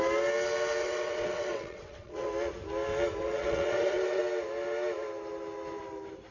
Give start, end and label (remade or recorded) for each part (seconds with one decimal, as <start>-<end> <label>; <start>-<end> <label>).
0.0-0.8 recorded; 0.8-2.3 remade; 2.3-3.2 recorded; 3.2-4.2 remade; 4.2-6.3 recorded